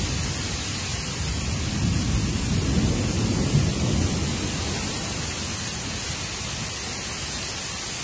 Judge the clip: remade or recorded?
recorded